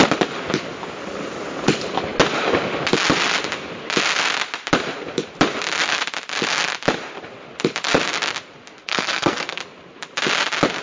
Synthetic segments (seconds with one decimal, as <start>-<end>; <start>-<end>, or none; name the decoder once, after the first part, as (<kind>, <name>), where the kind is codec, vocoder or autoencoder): 8.8-9.6 (codec, SNAC)